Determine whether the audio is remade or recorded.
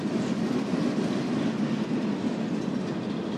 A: recorded